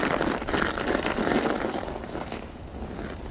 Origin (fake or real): real